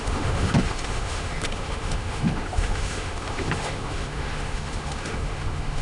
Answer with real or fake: fake